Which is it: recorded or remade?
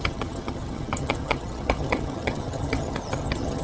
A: remade